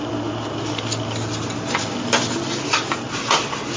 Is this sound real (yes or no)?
yes